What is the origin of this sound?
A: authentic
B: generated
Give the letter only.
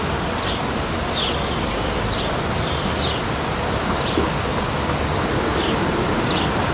A